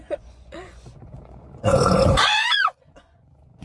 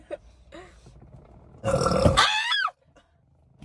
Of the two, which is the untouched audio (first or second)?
second